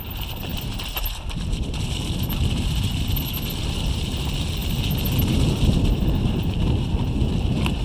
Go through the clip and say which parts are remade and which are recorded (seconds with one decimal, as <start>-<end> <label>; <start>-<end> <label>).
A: 0.0-4.6 recorded; 4.6-6.9 remade; 6.9-7.8 recorded